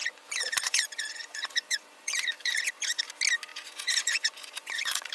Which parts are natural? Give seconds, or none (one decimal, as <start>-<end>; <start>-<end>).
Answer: 3.0-3.5